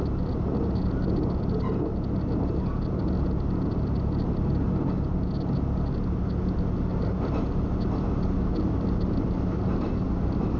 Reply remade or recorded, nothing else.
recorded